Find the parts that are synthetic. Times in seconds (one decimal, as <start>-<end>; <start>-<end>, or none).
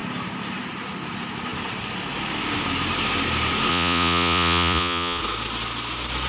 3.7-5.2